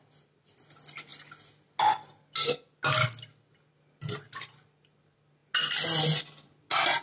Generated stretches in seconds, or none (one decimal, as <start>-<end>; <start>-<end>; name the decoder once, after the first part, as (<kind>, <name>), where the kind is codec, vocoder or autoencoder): none